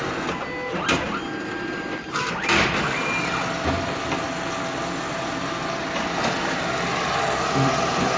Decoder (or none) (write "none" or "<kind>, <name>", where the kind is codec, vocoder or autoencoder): none